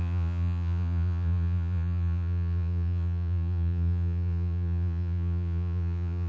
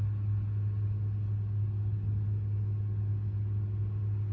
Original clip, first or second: second